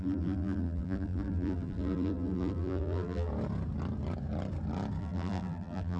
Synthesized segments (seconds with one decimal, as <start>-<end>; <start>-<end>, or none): 0.0-3.3; 5.0-6.0